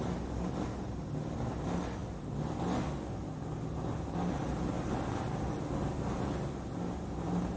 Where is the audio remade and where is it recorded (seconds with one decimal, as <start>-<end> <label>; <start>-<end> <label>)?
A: 0.0-7.6 recorded

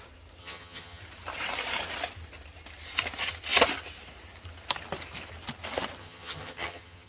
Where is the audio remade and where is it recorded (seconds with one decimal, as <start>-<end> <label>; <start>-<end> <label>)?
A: 0.0-0.4 recorded; 0.4-1.0 remade; 1.0-6.0 recorded; 6.0-7.1 remade

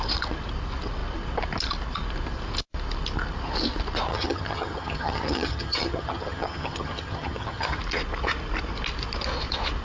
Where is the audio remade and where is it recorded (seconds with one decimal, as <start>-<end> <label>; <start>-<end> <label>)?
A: 0.0-4.1 recorded; 4.1-7.8 remade; 7.8-9.8 recorded

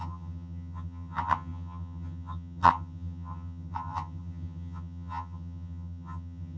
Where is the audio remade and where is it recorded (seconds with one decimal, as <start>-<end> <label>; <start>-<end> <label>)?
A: 0.0-6.6 remade

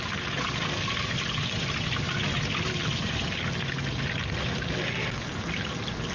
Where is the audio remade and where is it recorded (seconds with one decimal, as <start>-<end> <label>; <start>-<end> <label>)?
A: 0.0-6.1 recorded